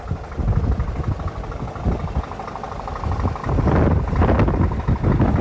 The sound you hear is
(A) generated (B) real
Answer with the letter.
B